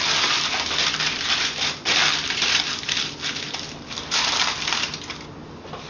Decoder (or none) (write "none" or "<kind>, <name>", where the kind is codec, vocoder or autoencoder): none